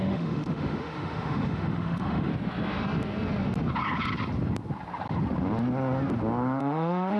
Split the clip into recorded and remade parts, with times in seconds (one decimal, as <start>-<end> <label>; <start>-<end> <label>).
0.0-2.3 remade; 2.3-6.6 recorded; 6.6-7.2 remade